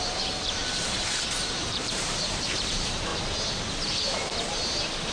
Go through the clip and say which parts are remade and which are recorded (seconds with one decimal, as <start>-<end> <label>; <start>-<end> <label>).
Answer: 0.0-0.6 remade; 0.6-1.3 recorded; 1.3-3.1 remade; 3.1-5.1 recorded